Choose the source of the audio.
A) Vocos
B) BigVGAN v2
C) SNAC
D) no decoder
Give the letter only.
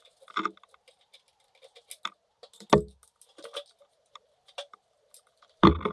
D